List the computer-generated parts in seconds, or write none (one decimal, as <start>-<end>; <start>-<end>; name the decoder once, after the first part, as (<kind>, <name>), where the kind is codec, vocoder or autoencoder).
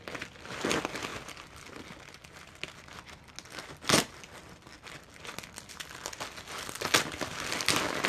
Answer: none